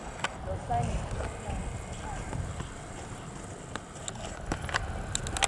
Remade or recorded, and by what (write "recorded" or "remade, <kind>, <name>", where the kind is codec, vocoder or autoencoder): recorded